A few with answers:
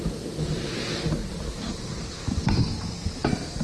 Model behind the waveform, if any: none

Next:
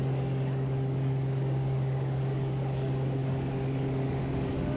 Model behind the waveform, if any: codec, DAC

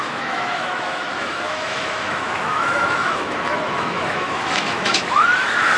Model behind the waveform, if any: autoencoder, DAC-VAE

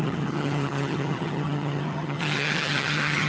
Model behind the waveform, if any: vocoder, HiFi-GAN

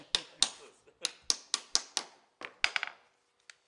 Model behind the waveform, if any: none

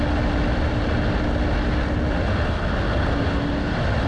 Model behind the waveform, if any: none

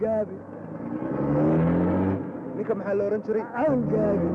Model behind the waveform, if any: none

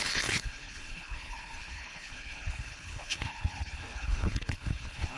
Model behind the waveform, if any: codec, HILCodec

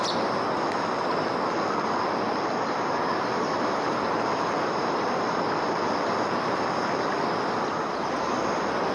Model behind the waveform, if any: none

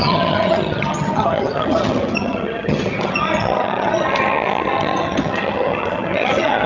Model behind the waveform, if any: vocoder, HiFi-GAN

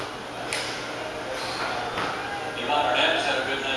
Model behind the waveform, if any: none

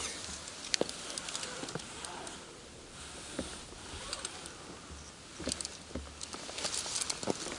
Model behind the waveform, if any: none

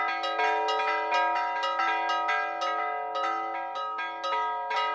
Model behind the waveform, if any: none